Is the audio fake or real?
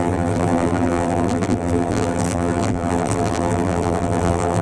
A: fake